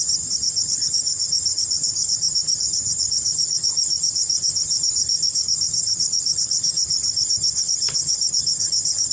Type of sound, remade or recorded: remade